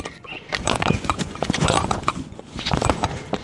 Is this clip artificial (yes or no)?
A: yes